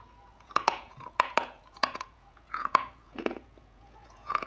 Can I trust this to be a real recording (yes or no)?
no